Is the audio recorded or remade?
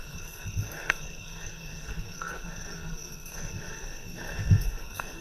remade